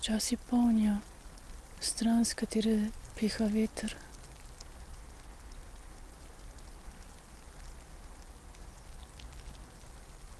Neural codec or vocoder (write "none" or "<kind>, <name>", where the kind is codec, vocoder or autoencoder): none